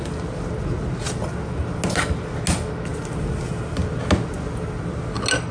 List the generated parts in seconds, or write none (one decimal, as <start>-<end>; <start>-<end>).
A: none